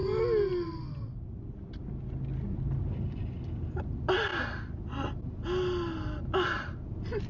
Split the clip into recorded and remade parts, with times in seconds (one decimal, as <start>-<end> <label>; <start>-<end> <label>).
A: 0.0-7.3 recorded